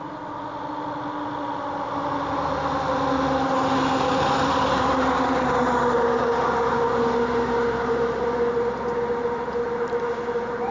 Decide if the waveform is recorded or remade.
recorded